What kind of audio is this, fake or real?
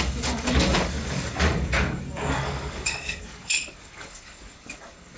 fake